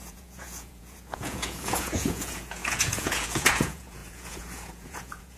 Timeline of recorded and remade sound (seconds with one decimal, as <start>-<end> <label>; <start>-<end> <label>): 0.0-5.4 remade